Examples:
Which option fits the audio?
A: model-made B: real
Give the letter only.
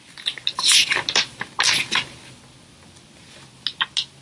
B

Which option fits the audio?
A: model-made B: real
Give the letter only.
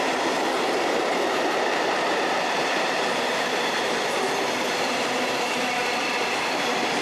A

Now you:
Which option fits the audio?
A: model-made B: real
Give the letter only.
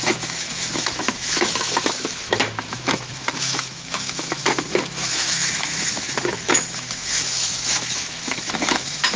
A